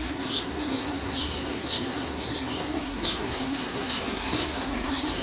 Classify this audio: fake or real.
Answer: fake